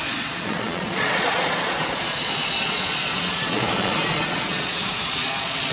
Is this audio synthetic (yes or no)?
yes